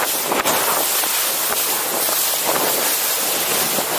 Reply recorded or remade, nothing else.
recorded